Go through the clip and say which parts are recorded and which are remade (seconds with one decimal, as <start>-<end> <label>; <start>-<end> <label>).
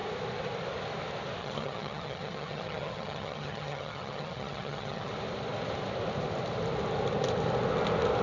0.0-1.4 recorded; 1.4-5.1 remade; 5.1-8.2 recorded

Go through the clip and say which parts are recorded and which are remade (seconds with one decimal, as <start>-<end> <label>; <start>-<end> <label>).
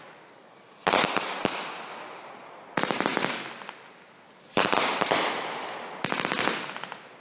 0.0-0.8 remade; 0.8-2.3 recorded; 2.3-3.1 remade; 3.1-4.2 recorded; 4.2-7.2 remade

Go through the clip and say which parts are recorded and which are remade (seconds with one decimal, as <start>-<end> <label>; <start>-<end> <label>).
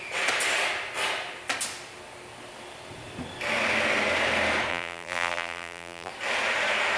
0.0-4.7 recorded; 4.7-6.1 remade; 6.1-7.0 recorded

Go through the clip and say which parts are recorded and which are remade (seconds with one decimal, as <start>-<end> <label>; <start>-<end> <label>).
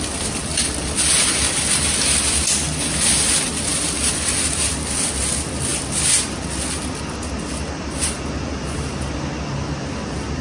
0.0-10.4 recorded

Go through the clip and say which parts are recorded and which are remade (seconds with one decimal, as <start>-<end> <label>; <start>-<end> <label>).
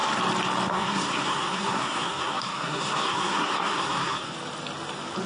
0.0-0.7 recorded; 0.7-4.3 remade; 4.3-5.3 recorded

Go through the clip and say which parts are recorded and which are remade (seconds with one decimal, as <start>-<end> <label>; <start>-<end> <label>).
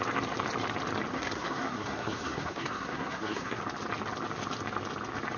0.0-1.1 recorded; 1.1-3.6 remade; 3.6-5.4 recorded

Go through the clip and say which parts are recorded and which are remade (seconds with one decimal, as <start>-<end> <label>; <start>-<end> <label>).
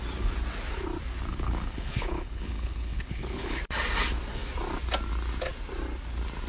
0.0-1.3 recorded; 1.3-3.6 remade; 3.6-6.5 recorded